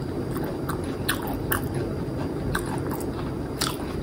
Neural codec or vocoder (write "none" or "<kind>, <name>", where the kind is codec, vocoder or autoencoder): none